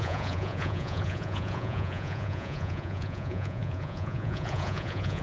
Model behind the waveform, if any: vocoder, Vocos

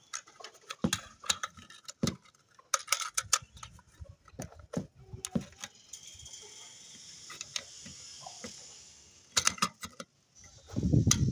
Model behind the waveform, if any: none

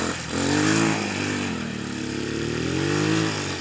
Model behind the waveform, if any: none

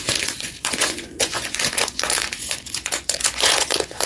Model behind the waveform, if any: vocoder, Vocos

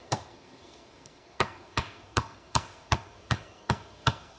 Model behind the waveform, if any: codec, SNAC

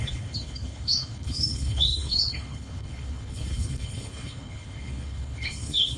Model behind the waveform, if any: codec, HILCodec